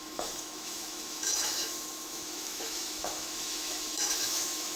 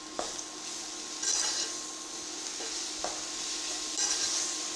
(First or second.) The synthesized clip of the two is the first